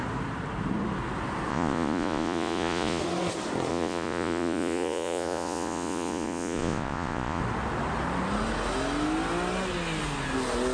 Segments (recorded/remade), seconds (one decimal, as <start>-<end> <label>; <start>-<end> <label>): 0.0-1.5 recorded; 1.5-3.0 remade; 3.0-3.7 recorded; 3.7-7.4 remade; 7.4-10.7 recorded